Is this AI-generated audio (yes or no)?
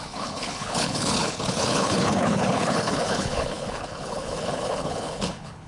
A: yes